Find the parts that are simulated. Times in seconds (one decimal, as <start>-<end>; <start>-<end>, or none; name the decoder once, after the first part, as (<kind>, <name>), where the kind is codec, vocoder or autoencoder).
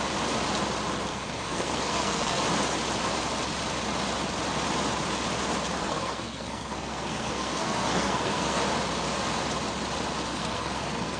1.1-2.4 (codec, SNAC); 5.8-8.6; 10.3-11.2